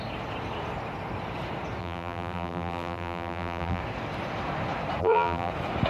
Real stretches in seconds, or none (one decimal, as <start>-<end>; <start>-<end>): 0.0-1.8; 3.8-5.0; 5.5-5.9